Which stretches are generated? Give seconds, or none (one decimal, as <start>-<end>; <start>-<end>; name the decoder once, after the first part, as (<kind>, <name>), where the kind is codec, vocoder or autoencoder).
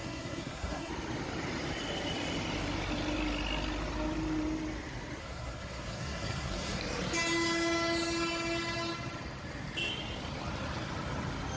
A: 0.0-0.9 (codec, SNAC); 5.2-6.8